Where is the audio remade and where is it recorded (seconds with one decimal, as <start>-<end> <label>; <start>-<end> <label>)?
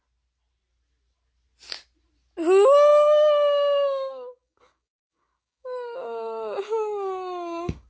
0.0-2.9 recorded; 2.9-7.9 remade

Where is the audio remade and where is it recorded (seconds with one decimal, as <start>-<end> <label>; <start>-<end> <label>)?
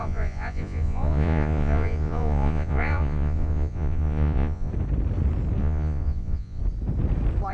0.0-4.7 remade; 4.7-5.6 recorded; 5.6-6.6 remade; 6.6-7.5 recorded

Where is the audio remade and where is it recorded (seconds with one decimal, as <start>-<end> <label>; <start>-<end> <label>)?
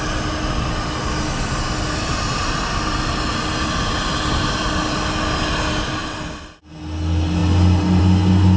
0.0-8.6 recorded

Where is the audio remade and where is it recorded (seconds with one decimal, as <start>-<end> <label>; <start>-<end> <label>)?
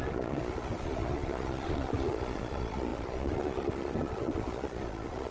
0.0-5.3 remade